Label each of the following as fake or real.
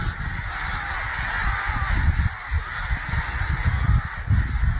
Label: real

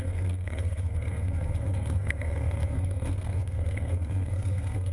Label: fake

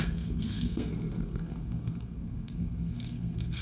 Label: fake